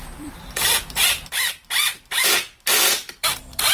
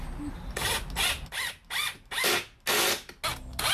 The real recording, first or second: second